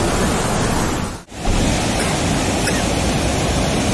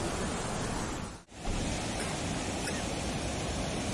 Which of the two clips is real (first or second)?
first